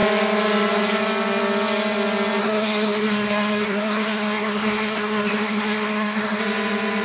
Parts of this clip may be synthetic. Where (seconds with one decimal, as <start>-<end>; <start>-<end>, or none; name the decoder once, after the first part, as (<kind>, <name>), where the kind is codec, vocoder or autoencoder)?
2.4-6.4 (codec, SNAC)